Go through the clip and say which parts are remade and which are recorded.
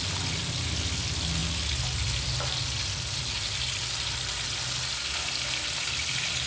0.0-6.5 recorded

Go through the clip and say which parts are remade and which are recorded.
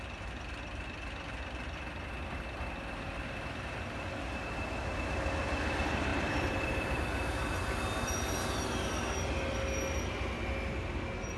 0.0-6.1 recorded; 6.1-7.0 remade; 7.0-11.4 recorded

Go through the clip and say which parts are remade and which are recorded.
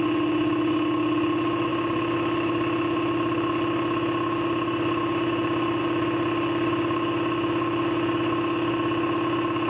0.0-9.7 recorded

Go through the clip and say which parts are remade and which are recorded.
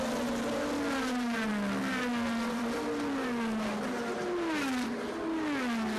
0.0-6.0 recorded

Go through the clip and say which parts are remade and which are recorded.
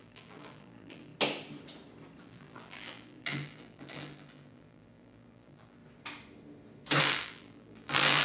0.0-1.1 remade; 1.1-2.2 recorded; 2.2-5.8 remade; 5.8-7.0 recorded; 7.0-8.2 remade